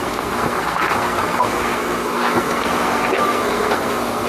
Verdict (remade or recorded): remade